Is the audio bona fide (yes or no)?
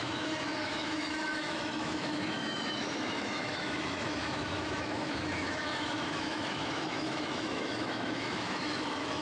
no